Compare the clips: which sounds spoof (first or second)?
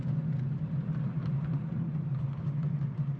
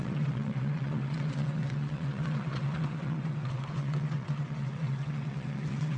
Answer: second